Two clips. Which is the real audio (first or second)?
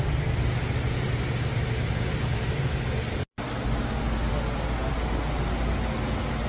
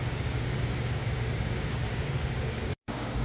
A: first